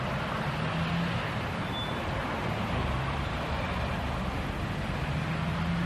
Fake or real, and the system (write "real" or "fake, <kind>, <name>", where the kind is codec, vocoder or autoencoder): real